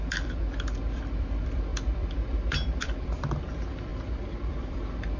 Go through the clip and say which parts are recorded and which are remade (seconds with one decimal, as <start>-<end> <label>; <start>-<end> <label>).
0.0-3.9 remade; 3.9-4.5 recorded; 4.5-5.2 remade

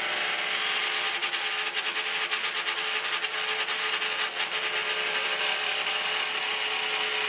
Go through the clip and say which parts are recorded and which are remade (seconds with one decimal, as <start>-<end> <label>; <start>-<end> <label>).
0.0-0.8 recorded; 0.8-1.6 remade; 1.6-4.8 recorded; 4.8-5.9 remade; 5.9-7.3 recorded

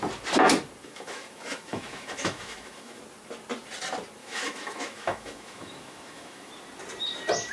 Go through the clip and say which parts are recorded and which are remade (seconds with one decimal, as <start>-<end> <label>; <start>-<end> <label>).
0.0-0.8 recorded; 0.8-3.0 remade; 3.0-4.2 recorded; 4.2-6.5 remade; 6.5-7.5 recorded